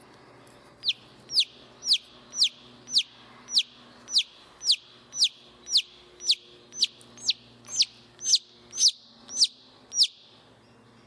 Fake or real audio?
real